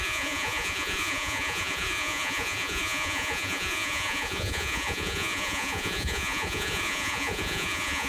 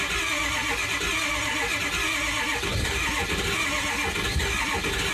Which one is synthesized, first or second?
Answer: first